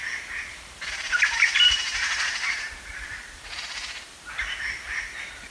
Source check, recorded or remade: remade